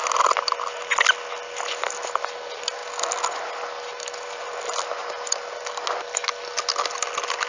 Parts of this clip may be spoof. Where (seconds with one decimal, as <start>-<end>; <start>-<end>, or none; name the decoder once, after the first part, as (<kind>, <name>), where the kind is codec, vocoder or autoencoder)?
none